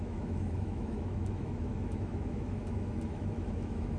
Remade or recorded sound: remade